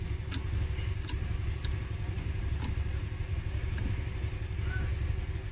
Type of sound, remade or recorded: recorded